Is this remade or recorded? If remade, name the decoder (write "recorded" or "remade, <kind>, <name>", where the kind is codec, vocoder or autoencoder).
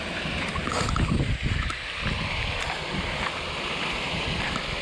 remade, vocoder, BigVGAN v2